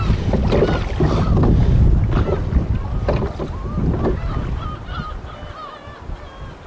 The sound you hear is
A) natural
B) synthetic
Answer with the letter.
A